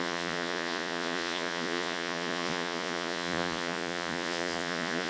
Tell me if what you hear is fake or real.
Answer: fake